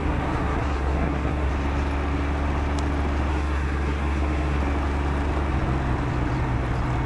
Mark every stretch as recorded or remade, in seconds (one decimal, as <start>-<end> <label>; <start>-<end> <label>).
0.0-1.5 remade; 1.5-3.3 recorded; 3.3-4.6 remade; 4.6-7.1 recorded